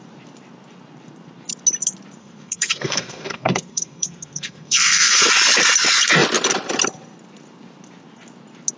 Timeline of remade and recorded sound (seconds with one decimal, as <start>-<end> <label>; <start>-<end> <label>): 0.0-2.2 recorded; 2.2-5.2 remade; 5.2-8.8 recorded

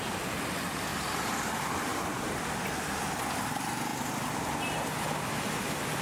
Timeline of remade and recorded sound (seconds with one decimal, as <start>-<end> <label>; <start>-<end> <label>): 0.0-0.9 recorded; 0.9-1.5 remade; 1.5-6.0 recorded

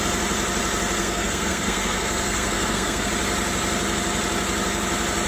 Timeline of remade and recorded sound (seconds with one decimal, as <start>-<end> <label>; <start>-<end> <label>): 0.0-1.0 recorded; 1.0-3.1 remade; 3.1-5.3 recorded

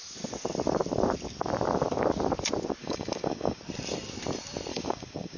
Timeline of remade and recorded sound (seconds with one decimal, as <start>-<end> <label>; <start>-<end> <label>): 0.0-2.8 recorded; 2.8-3.6 remade; 3.6-4.7 recorded; 4.7-5.4 remade

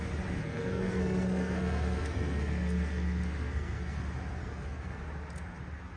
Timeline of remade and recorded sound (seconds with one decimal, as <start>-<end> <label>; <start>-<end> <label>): 0.0-0.4 recorded; 0.4-4.0 remade; 4.0-4.4 recorded; 4.4-5.0 remade; 5.0-6.0 recorded

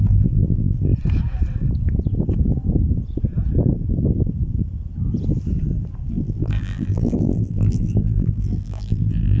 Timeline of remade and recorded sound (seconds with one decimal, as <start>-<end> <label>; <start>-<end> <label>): 0.0-0.9 remade; 0.9-6.1 recorded; 6.1-9.4 remade

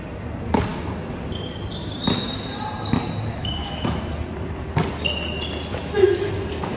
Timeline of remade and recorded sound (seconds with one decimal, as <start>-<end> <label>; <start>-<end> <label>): 0.0-3.4 recorded; 3.4-4.0 remade; 4.0-5.7 recorded; 5.7-6.3 remade; 6.3-6.8 recorded

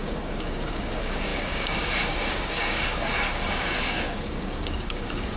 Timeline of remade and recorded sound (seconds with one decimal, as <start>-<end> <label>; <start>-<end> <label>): 0.0-5.4 remade